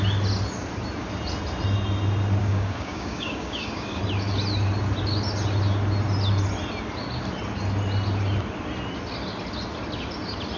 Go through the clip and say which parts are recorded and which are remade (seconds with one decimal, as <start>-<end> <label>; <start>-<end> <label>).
0.0-2.4 recorded; 2.4-4.0 remade; 4.0-10.6 recorded